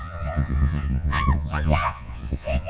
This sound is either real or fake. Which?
fake